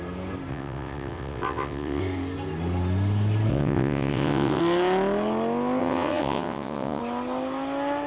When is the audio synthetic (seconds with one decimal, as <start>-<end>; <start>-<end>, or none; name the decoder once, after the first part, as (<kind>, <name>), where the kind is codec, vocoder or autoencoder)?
0.5-2.0 (vocoder, WaveNeXt); 3.5-4.6; 5.8-7.0